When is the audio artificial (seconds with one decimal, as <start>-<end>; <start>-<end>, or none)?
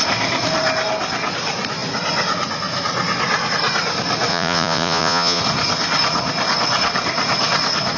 4.3-5.4